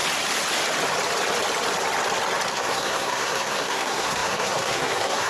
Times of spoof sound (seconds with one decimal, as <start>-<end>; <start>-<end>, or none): 2.5-5.3